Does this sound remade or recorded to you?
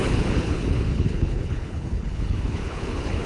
remade